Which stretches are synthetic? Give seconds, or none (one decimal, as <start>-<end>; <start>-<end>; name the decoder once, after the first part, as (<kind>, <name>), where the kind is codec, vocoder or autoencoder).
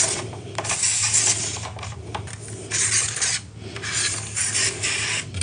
0.0-0.9 (vocoder, BigVGAN v2); 3.7-5.4